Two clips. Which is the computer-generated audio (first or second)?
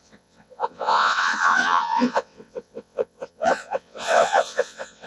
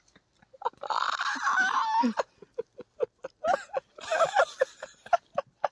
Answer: first